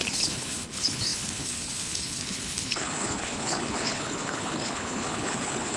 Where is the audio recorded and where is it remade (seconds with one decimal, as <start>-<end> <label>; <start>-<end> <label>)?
0.0-5.8 remade